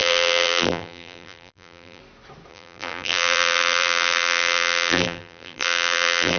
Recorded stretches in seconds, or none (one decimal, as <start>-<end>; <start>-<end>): 2.0-2.5